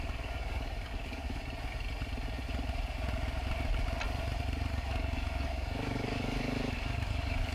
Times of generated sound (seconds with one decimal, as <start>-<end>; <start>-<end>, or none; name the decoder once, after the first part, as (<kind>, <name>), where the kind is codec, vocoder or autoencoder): 0.0-1.4 (codec, DAC); 4.7-7.5